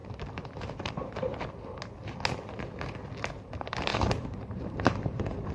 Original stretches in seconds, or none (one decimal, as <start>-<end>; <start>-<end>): 1.3-3.3